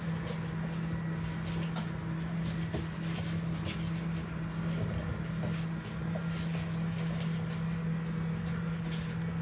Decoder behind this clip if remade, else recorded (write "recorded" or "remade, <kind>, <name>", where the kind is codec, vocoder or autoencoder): recorded